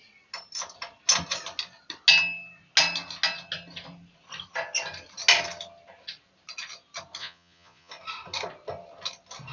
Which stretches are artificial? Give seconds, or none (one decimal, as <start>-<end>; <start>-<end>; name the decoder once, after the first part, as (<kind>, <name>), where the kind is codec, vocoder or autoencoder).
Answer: 7.2-7.9 (vocoder, Vocos)